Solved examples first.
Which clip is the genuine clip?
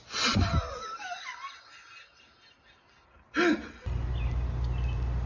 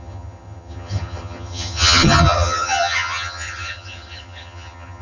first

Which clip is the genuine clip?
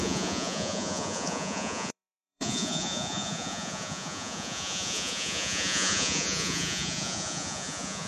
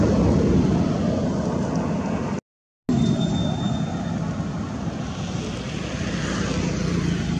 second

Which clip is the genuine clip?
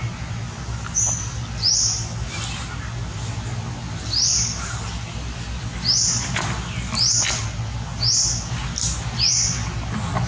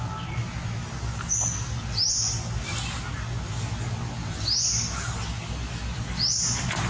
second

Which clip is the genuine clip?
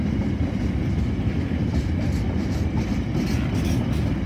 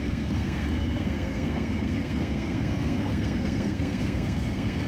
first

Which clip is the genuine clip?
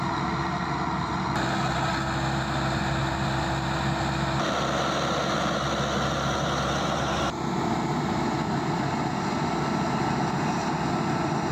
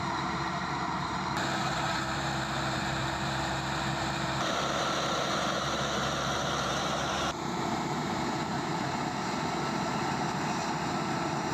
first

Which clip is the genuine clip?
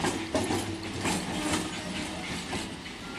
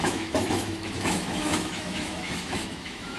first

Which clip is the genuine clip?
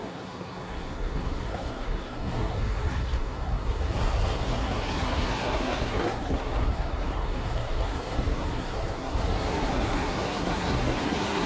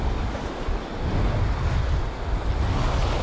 second